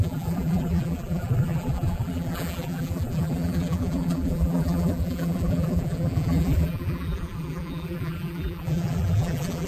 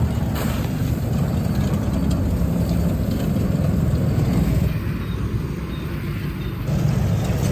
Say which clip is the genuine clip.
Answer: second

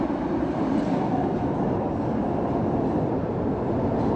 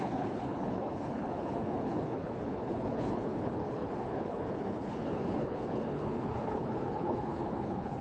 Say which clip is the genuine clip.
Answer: first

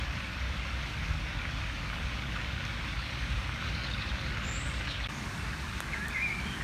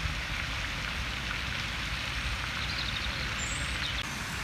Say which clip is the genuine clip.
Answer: second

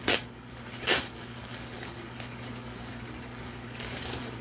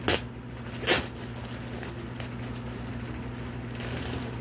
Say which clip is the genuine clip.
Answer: second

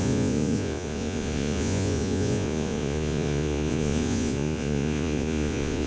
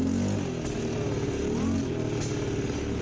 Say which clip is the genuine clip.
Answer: second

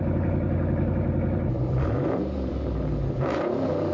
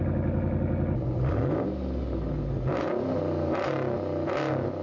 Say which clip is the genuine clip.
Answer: second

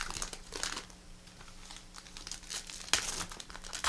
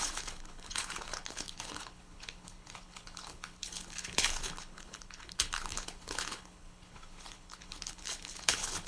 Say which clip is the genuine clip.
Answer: first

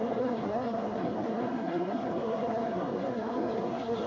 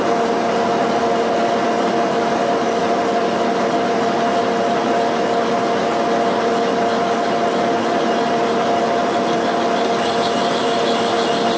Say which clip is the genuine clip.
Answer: second